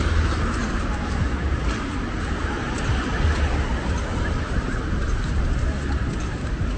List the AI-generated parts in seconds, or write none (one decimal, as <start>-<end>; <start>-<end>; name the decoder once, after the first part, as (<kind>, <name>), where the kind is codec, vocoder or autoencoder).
none